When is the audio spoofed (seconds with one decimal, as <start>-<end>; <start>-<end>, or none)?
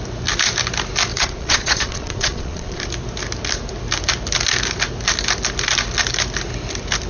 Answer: 1.1-2.8